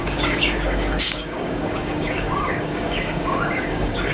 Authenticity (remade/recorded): remade